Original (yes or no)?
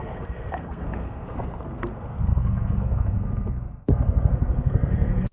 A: no